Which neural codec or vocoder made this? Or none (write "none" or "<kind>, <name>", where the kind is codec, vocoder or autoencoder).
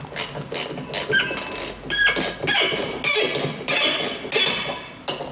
none